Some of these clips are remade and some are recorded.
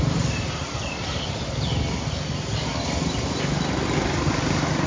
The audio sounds recorded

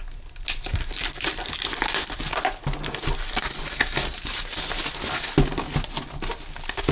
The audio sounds recorded